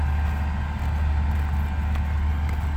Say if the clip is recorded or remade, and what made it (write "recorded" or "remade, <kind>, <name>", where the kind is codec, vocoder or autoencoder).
recorded